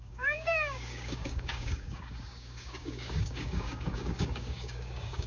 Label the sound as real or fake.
fake